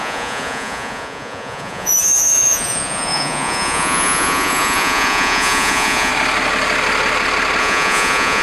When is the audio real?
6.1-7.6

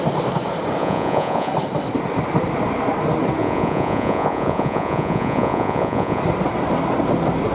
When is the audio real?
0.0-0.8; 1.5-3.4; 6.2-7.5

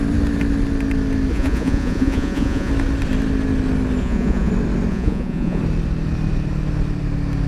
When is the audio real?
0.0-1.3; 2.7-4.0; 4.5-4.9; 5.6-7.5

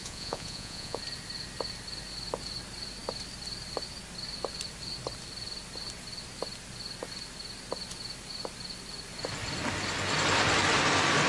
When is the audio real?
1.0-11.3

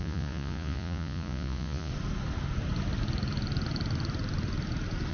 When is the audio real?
1.9-5.1

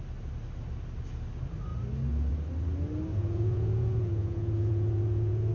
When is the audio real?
0.0-3.1

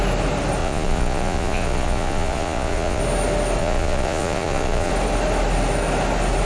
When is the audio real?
0.0-0.6; 3.0-3.6; 4.9-6.4